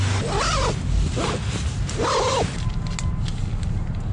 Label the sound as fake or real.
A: real